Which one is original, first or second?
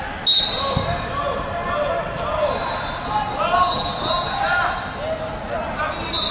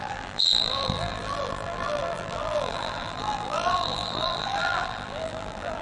first